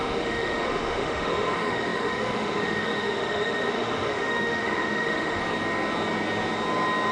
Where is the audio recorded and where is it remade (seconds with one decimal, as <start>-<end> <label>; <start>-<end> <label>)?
0.0-5.4 remade; 5.4-7.1 recorded